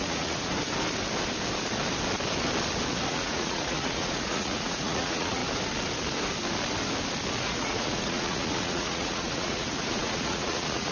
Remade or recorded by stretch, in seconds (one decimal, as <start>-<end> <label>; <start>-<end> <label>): 0.0-0.5 remade; 0.5-3.1 recorded; 3.1-5.4 remade; 5.4-7.4 recorded; 7.4-10.9 remade